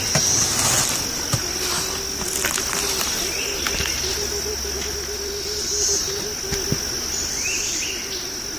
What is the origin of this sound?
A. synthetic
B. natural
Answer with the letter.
B